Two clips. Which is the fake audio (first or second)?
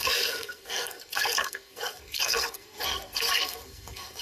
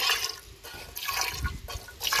first